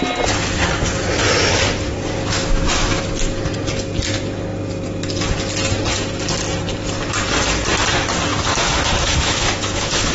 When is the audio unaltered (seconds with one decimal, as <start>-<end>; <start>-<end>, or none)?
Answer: 0.0-2.4; 3.0-8.3

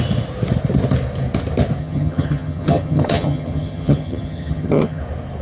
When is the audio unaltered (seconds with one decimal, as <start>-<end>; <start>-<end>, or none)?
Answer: 0.0-1.8; 5.0-5.4